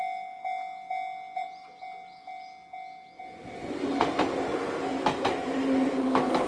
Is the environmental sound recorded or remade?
recorded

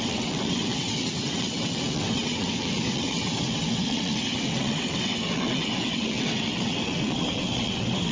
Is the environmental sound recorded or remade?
remade